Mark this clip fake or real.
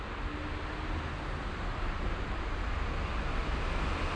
real